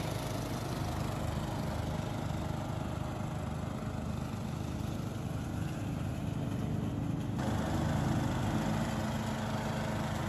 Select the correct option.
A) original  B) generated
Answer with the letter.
A